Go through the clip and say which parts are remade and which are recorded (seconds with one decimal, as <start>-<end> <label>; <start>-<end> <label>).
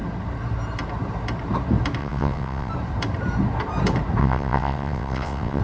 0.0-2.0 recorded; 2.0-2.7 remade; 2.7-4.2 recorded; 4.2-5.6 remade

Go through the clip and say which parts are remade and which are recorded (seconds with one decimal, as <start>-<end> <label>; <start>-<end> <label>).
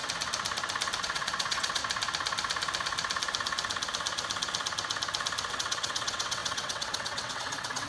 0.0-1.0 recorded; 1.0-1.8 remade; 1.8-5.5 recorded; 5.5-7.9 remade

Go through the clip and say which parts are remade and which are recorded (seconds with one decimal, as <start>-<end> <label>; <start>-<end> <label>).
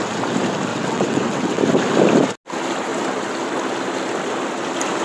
0.0-0.7 recorded; 0.7-1.6 remade; 1.6-5.0 recorded